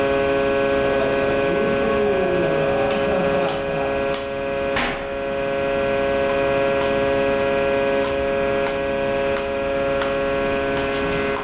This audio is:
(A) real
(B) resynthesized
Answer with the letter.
A